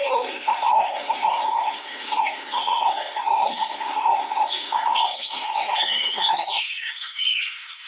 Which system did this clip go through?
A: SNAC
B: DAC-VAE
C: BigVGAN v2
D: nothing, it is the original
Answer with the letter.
A